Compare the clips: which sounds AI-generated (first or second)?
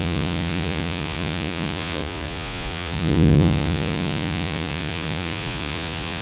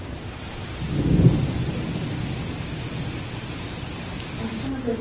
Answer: first